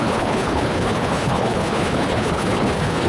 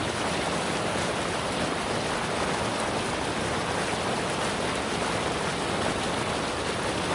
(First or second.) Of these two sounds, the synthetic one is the first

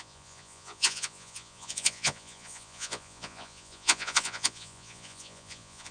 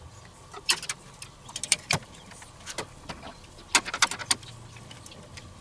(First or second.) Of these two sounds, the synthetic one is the first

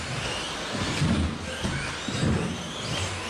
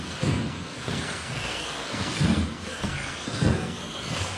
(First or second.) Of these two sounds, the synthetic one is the second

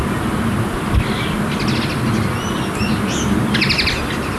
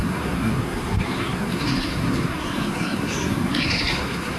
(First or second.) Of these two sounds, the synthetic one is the second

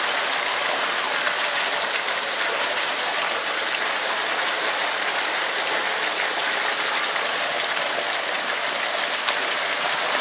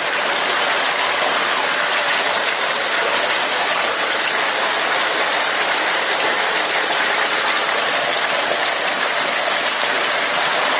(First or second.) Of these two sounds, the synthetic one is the second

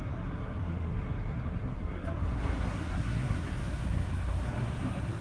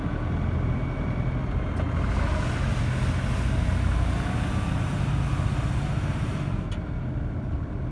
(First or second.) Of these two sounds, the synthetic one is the first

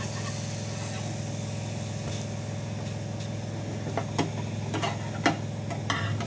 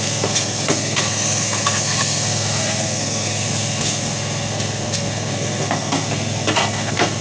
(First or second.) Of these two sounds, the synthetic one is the second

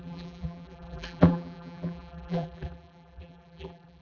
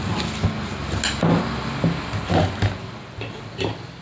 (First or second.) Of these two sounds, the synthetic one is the first